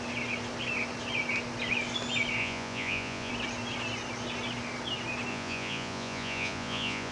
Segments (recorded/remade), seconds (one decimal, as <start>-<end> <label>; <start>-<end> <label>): 0.0-2.4 recorded; 2.4-3.3 remade; 3.3-5.3 recorded; 5.3-7.1 remade